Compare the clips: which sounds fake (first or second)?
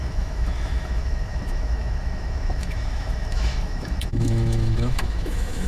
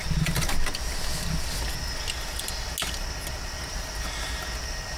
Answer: first